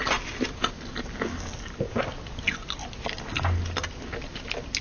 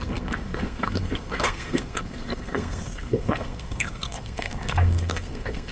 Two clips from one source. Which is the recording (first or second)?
first